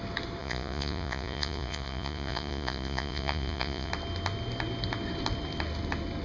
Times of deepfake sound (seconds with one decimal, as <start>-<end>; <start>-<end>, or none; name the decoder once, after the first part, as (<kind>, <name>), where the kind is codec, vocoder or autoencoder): 0.4-3.9 (vocoder, Vocos)